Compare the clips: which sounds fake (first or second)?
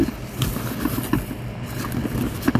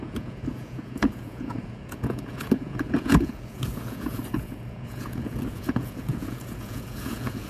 second